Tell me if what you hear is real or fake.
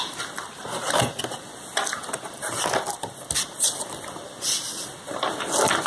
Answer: real